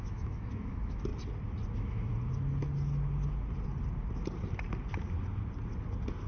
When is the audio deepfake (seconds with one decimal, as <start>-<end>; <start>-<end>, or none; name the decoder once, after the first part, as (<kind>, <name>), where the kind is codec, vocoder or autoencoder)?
0.0-1.1 (autoencoder, DAC-VAE); 1.7-2.1